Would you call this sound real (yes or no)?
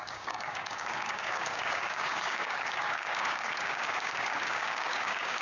no